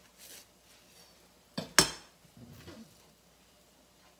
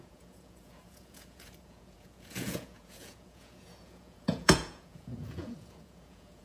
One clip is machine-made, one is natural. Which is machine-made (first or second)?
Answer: second